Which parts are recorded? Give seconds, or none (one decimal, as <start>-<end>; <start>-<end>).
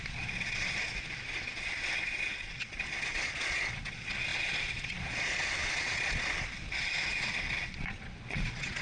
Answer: none